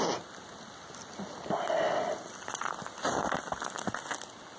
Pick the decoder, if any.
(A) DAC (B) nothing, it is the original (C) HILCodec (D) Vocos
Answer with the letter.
B